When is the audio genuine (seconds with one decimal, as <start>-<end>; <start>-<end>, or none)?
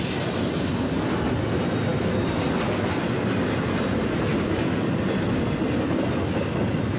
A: 0.0-7.0